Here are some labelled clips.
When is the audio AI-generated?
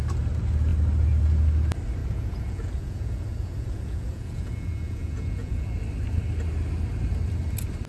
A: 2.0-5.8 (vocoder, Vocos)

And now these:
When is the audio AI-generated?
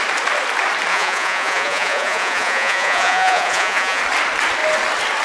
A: 0.9-4.0 (vocoder, Vocos)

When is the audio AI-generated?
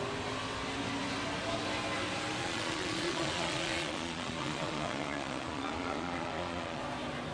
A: 2.4-6.8 (vocoder, Vocos)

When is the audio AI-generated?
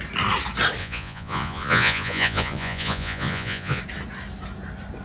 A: 0.8-3.8 (vocoder, Vocos)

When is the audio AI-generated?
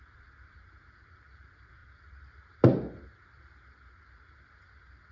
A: none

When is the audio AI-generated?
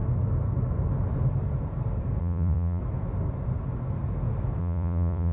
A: 2.2-2.8 (vocoder, Vocos); 4.6-5.3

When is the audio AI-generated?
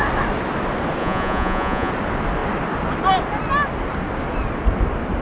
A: 1.0-1.9 (vocoder, Vocos)